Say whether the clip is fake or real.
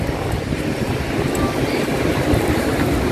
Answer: real